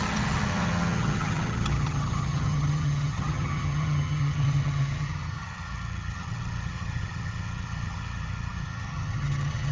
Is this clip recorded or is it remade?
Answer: remade